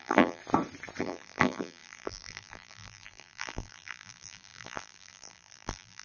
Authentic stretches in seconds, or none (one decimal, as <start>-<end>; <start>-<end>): 0.4-1.0

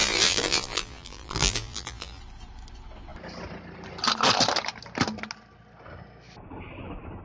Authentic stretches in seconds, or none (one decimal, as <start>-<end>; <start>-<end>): 2.2-7.2

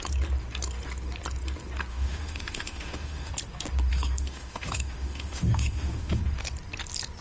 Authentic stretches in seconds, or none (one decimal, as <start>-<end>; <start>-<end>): 0.0-1.9; 3.3-3.9; 6.2-7.2

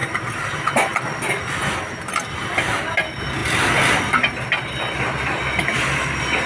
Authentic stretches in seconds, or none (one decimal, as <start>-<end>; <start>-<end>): 0.0-6.5

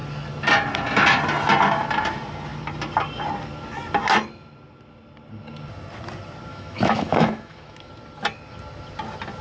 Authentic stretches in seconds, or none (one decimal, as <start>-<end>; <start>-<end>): 0.0-6.5; 7.9-9.4

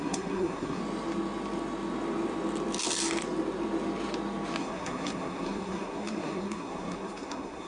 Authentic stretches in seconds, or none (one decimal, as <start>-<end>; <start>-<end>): 0.8-4.6

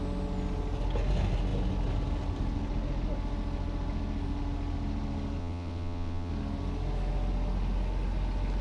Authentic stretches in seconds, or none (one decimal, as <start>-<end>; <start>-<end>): 0.0-5.4; 6.3-8.6

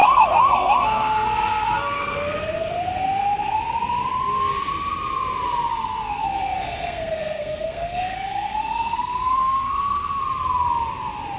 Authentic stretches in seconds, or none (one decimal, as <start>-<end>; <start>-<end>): 3.6-5.7; 10.2-11.4